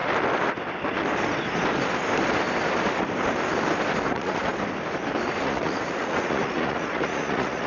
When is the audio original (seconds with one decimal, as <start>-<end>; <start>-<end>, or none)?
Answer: 0.0-4.1; 4.5-5.3